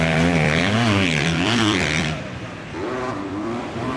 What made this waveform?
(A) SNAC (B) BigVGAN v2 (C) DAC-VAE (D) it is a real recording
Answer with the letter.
B